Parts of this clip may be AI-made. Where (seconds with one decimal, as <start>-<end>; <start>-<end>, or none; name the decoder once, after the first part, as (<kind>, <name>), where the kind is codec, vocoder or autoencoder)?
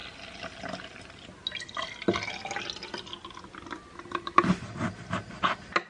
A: none